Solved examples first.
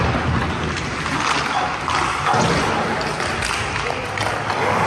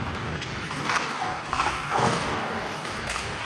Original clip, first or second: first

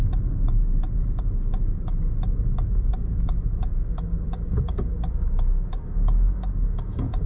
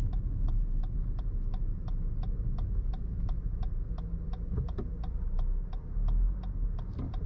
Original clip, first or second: second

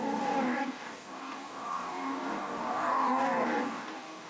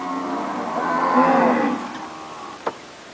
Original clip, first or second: second